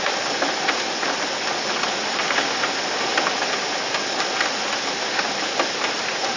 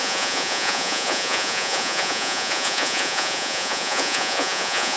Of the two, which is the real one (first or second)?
first